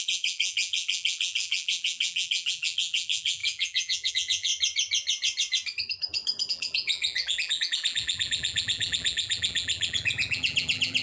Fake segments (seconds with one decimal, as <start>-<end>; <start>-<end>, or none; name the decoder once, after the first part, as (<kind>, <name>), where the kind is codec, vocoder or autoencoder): 0.0-4.5 (vocoder, BigVGAN v2); 6.5-11.0